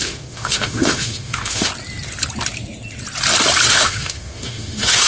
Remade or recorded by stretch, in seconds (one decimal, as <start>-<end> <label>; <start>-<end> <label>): 0.0-1.7 remade; 1.7-3.7 recorded; 3.7-5.1 remade